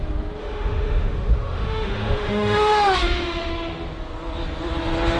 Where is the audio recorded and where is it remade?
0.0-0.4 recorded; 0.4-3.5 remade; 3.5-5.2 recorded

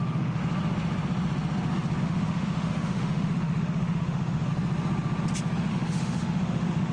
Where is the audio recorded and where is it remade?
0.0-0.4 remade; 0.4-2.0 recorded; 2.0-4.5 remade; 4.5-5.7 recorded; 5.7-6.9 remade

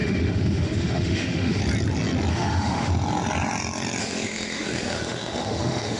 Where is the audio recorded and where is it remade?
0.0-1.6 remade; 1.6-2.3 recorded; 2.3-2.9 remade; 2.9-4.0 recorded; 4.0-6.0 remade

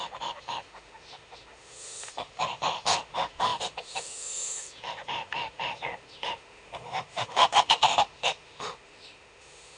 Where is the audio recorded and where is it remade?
0.0-9.8 remade

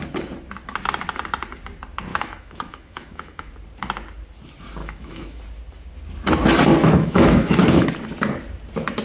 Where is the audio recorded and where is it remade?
0.0-2.1 recorded; 2.1-3.5 remade; 3.5-4.8 recorded; 4.8-5.4 remade; 5.4-6.8 recorded; 6.8-7.9 remade; 7.9-9.0 recorded

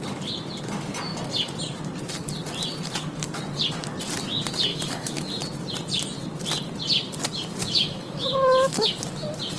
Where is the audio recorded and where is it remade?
0.0-4.7 recorded; 4.7-5.3 remade; 5.3-7.6 recorded; 7.6-8.9 remade; 8.9-9.6 recorded

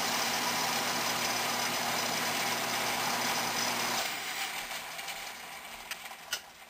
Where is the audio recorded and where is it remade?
0.0-4.0 recorded; 4.0-4.5 remade; 4.5-6.7 recorded

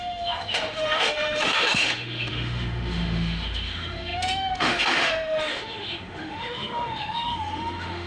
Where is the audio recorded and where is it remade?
0.0-8.1 remade